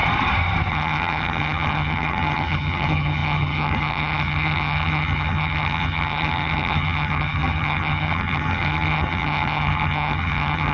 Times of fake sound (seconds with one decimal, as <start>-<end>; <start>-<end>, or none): 0.7-10.7